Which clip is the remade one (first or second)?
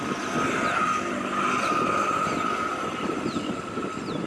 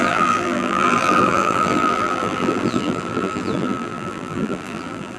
second